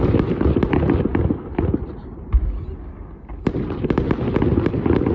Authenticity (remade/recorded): recorded